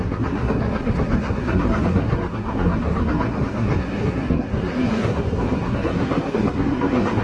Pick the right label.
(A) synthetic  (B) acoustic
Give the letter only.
A